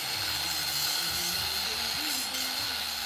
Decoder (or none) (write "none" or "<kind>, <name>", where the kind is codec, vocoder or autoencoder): none